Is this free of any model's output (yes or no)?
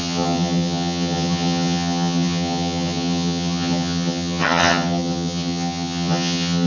no